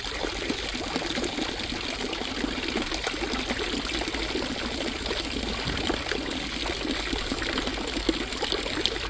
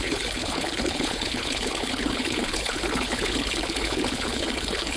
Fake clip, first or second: second